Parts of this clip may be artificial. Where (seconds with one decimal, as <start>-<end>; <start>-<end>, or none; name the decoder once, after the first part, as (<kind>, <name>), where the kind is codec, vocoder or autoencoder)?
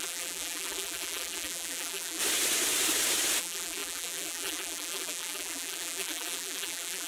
0.0-2.2 (vocoder, BigVGAN v2); 3.4-7.1